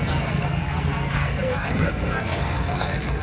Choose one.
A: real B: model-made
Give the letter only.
B